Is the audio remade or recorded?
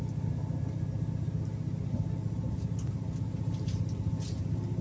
recorded